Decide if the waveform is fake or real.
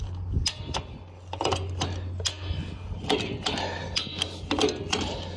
real